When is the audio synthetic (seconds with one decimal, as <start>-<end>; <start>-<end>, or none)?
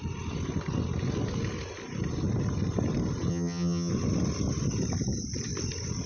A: 3.3-3.9